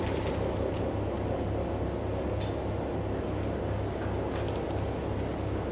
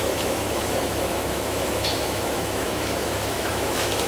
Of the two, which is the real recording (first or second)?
first